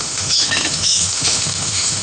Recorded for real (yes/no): no